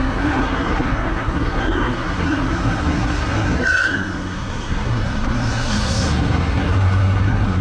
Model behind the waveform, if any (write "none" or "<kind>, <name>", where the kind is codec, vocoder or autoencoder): codec, SNAC